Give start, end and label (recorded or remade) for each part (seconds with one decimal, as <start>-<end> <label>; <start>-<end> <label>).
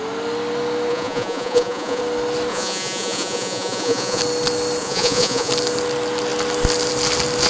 0.0-0.9 recorded; 0.9-2.0 remade; 2.0-2.5 recorded; 2.5-4.2 remade; 4.2-4.8 recorded; 4.8-5.5 remade; 5.5-7.5 recorded